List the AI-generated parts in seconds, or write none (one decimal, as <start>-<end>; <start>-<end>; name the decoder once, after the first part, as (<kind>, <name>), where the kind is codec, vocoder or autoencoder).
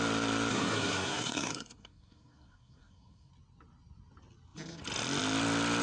0.5-3.3 (codec, SNAC)